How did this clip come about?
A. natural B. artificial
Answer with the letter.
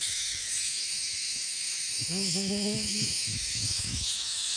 B